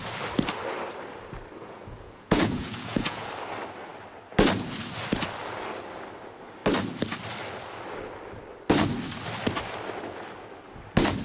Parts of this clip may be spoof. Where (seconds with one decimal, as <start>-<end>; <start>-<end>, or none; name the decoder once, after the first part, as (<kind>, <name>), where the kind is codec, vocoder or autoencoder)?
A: 1.6-3.3 (vocoder, Vocos)